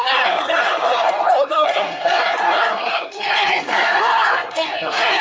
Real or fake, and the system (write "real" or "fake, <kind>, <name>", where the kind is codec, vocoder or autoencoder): fake, codec, SNAC